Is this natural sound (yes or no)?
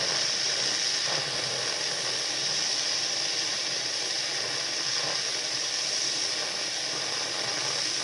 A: yes